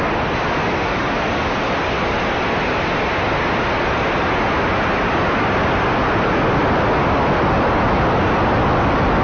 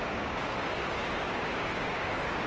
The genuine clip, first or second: first